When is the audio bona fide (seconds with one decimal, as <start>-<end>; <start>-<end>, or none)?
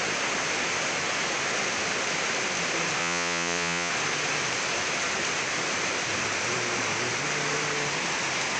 0.0-3.0; 3.9-8.6